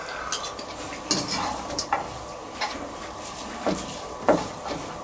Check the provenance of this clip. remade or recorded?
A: recorded